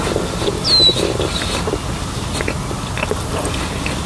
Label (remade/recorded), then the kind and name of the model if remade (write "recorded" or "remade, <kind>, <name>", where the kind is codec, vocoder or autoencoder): recorded